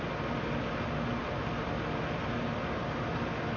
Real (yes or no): yes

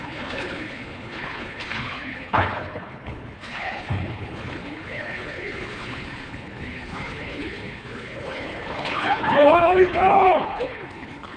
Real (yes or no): no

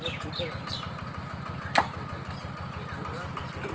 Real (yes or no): yes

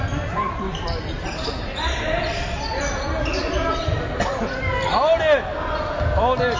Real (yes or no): yes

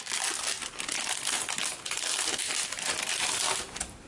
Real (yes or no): yes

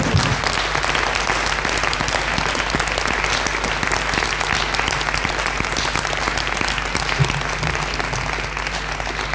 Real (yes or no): yes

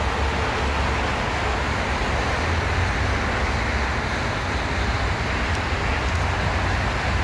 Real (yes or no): yes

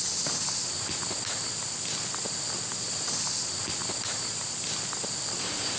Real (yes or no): yes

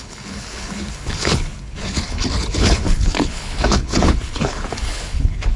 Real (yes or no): no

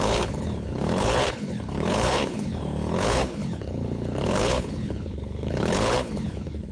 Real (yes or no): no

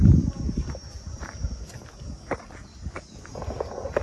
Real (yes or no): yes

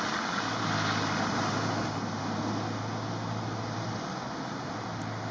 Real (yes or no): yes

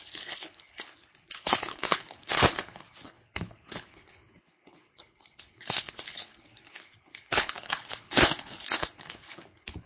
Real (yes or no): no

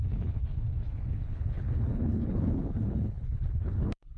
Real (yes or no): no